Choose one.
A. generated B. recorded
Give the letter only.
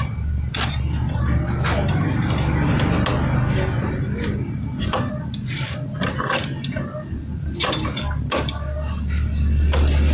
B